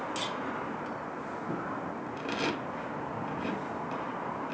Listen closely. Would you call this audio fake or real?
real